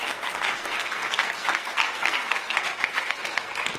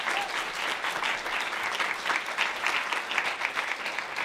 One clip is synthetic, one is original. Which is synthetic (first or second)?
first